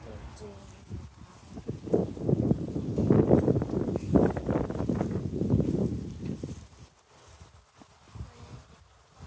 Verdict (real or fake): real